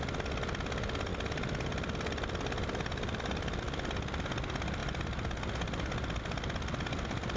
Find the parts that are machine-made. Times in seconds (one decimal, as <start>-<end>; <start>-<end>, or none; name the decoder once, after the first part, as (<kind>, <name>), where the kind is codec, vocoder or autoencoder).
1.1-3.6 (vocoder, BigVGAN v2)